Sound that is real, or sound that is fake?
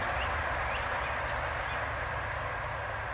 fake